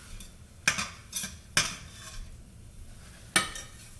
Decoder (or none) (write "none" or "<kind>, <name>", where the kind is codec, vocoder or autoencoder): none